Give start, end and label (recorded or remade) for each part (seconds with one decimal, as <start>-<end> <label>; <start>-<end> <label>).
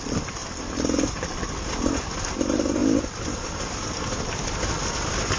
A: 0.0-5.4 recorded